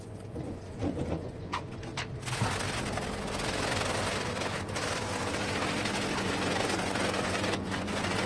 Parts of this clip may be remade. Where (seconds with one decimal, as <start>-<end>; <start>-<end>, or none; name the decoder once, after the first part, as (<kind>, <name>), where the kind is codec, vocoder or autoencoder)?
0.0-1.9 (vocoder, Vocos); 6.2-8.3